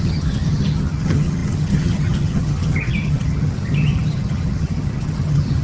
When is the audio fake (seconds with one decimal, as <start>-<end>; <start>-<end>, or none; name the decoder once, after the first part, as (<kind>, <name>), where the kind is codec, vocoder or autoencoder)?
0.0-5.6 (vocoder, HiFi-GAN)